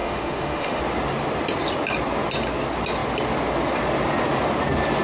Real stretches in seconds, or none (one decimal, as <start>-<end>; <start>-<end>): 0.8-5.0